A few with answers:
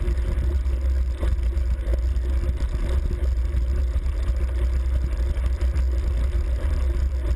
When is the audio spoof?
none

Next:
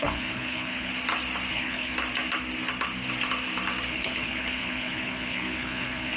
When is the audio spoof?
0.0-0.9 (codec, HILCodec); 1.5-1.9; 3.9-6.2

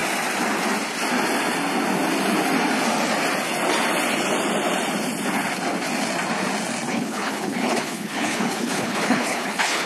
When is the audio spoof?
6.9-9.9 (codec, HILCodec)

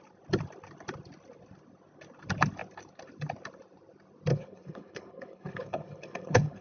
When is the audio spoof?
4.3-6.6 (codec, HILCodec)

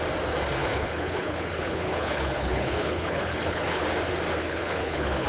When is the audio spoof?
0.6-3.8 (codec, HILCodec); 4.4-5.3

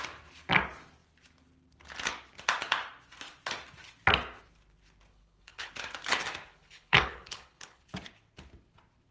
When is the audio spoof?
5.1-5.7 (codec, HILCodec); 6.5-7.8

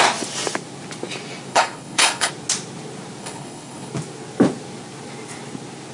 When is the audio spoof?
1.5-2.3 (codec, HILCodec); 3.2-3.9

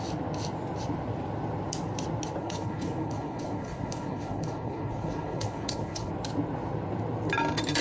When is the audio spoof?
2.4-6.1 (codec, HILCodec)